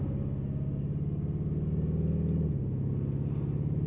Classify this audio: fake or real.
real